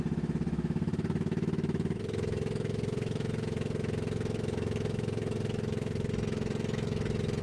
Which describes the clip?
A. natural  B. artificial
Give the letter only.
B